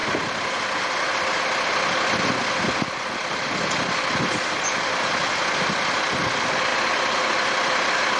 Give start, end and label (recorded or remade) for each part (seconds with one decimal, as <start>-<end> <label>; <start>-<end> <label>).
0.0-8.2 recorded